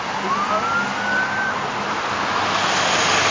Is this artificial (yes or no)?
no